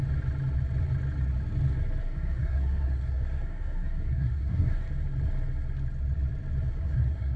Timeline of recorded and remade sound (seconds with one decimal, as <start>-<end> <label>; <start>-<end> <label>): 0.0-2.0 recorded; 2.0-4.9 remade; 4.9-6.7 recorded; 6.7-7.4 remade

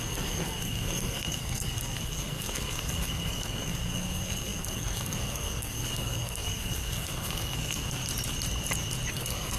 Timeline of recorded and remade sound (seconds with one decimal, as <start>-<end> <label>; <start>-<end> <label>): 0.0-8.0 remade; 8.0-9.1 recorded; 9.1-9.6 remade

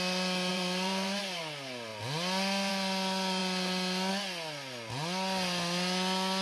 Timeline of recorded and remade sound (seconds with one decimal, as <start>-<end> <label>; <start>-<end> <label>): 0.0-0.5 recorded; 0.5-1.4 remade; 1.4-6.4 recorded

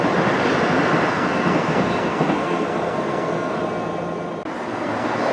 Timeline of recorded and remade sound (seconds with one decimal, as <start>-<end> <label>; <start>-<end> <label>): 0.0-1.1 recorded; 1.1-3.6 remade; 3.6-4.7 recorded; 4.7-5.3 remade

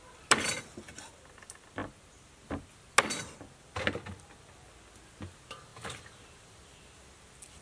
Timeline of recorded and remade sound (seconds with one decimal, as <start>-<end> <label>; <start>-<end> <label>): 0.0-7.6 recorded

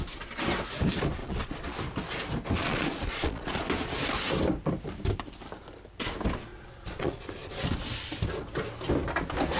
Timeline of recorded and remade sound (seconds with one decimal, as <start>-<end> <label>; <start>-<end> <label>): 0.0-1.2 recorded; 1.2-1.7 remade; 1.7-2.6 recorded; 2.6-3.6 remade; 3.6-6.5 recorded; 6.5-7.7 remade; 7.7-9.6 recorded